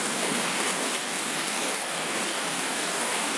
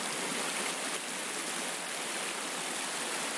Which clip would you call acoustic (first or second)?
second